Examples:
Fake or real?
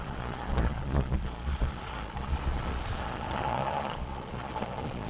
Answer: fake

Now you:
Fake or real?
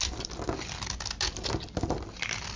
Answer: real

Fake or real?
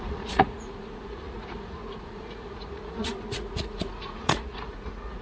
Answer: fake